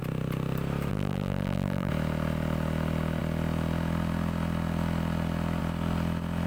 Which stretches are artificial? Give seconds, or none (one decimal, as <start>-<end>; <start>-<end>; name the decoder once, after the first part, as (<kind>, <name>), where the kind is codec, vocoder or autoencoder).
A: 0.9-1.9 (vocoder, BigVGAN v2)